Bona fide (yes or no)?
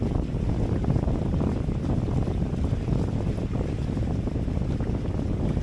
yes